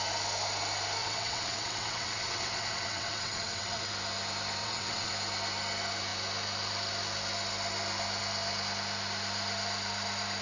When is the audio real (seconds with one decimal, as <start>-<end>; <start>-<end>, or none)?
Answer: 0.0-1.0; 3.9-4.6; 5.1-10.4